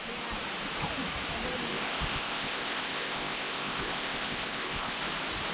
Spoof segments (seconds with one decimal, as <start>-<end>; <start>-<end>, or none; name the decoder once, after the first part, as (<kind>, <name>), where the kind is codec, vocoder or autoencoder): 1.7-5.0 (codec, ZipCodec)